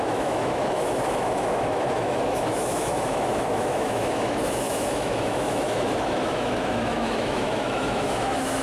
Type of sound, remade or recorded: remade